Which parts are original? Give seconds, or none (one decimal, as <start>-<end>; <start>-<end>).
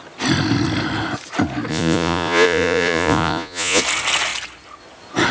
0.0-1.7; 3.8-5.3